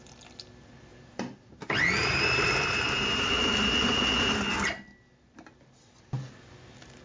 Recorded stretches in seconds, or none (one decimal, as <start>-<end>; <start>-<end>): 0.0-0.9; 4.0-7.0